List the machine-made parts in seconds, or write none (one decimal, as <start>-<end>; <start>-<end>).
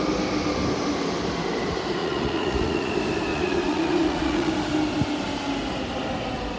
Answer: 2.0-2.9; 3.3-4.5